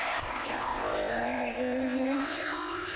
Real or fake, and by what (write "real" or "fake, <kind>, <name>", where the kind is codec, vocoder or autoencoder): fake, codec, ZipCodec